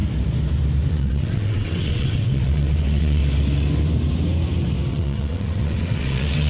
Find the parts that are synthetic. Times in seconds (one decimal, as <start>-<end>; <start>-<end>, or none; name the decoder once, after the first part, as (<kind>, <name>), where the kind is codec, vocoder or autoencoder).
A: 0.9-3.2 (vocoder, WaveNeXt); 4.9-6.5